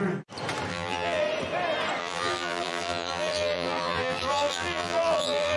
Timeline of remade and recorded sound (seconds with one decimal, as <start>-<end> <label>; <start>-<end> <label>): 0.0-0.7 recorded; 0.7-1.2 remade; 1.2-2.0 recorded; 2.0-5.6 remade